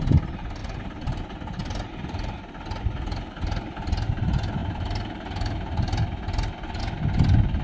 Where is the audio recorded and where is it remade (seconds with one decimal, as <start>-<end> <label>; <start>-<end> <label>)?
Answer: 0.0-0.6 recorded; 0.6-1.2 remade; 1.2-7.6 recorded